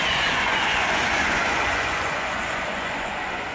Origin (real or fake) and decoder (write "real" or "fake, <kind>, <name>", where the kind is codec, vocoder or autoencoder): fake, vocoder, Vocos